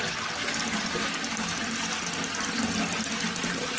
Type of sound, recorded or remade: recorded